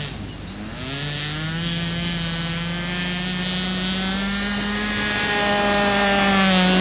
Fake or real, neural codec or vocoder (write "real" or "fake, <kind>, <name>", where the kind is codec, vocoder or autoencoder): real